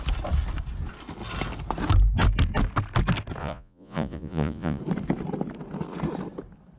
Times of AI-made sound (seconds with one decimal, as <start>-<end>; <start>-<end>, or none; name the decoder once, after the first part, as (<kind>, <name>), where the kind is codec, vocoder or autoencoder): 3.4-4.8 (vocoder, Vocos)